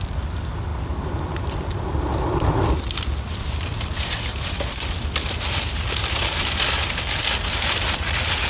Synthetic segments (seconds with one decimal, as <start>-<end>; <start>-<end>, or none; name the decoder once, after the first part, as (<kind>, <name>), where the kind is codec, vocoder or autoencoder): 0.0-8.5 (vocoder, BigVGAN v2)

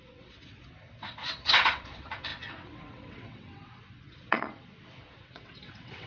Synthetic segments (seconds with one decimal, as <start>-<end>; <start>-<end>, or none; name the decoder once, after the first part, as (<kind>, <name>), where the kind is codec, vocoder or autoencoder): 0.0-6.1 (vocoder, WaveNeXt)

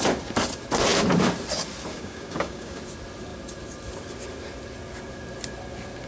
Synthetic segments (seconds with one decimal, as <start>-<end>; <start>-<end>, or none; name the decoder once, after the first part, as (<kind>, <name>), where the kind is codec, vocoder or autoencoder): 1.9-2.8 (codec, DAC)

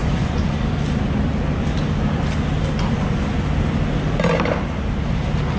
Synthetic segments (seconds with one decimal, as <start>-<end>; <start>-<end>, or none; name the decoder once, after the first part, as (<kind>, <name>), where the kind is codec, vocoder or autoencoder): 0.0-0.5 (vocoder, Vocos)